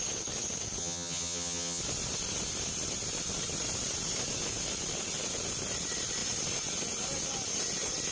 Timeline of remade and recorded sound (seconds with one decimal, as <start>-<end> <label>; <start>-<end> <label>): 0.0-0.8 recorded; 0.8-1.8 remade; 1.8-8.1 recorded